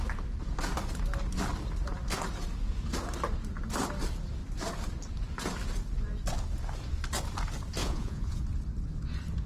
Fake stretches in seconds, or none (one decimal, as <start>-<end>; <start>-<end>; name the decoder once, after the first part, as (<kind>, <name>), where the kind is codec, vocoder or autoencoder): 7.8-8.4 (vocoder, Vocos)